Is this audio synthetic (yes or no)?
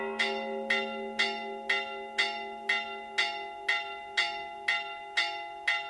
no